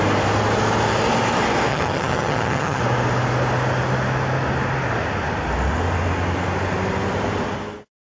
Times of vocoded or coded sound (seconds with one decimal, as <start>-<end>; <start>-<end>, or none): 1.7-2.8